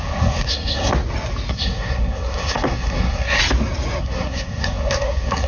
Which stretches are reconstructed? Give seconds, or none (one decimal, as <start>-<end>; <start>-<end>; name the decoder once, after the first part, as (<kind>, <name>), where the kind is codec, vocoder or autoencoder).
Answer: 0.0-0.9 (codec, SNAC); 1.5-3.4; 4.0-5.5